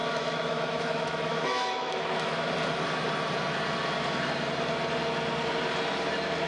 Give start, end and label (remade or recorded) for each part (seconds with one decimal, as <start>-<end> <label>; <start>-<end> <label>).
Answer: 0.0-2.5 remade; 2.5-6.5 recorded